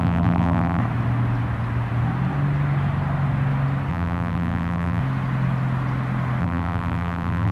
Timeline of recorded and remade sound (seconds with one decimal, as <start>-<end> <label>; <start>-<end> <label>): 0.0-0.8 remade; 0.8-3.9 recorded; 3.9-5.0 remade; 5.0-6.4 recorded; 6.4-7.5 remade